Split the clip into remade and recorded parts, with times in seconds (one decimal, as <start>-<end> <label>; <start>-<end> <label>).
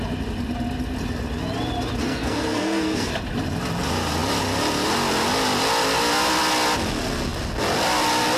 0.0-2.0 recorded; 2.0-3.1 remade; 3.1-8.4 recorded